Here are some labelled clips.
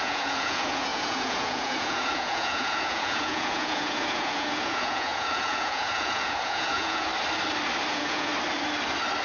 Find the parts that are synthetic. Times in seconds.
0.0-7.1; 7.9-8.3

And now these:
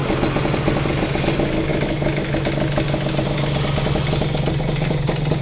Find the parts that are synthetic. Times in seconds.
1.7-2.5

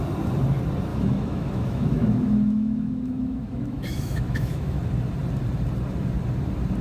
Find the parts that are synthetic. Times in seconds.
0.9-4.8

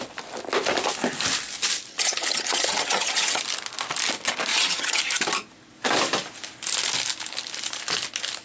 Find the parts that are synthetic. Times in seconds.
1.9-3.4; 4.5-5.0